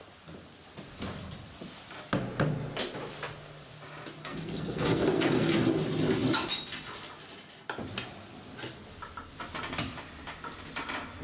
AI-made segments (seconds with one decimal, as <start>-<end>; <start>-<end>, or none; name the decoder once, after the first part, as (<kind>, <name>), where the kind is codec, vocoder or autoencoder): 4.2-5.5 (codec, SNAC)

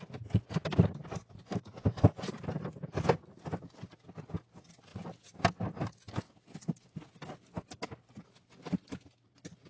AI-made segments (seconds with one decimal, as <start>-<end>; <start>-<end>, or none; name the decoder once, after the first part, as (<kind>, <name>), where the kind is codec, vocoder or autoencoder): none

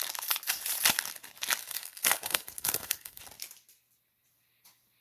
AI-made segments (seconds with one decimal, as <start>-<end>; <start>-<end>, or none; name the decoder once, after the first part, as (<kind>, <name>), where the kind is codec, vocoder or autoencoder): 1.6-3.2 (codec, SNAC)

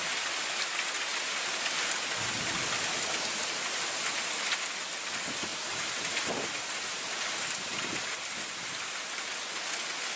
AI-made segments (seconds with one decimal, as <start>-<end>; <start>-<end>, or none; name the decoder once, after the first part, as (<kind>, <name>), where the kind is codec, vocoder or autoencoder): none

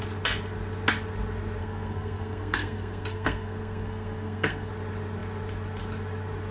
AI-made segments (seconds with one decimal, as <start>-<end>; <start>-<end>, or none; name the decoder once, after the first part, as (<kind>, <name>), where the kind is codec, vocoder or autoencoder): 1.6-4.7 (codec, SNAC)